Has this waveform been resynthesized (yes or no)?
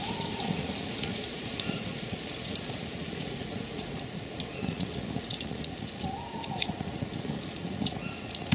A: yes